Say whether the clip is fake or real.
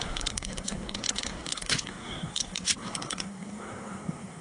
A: fake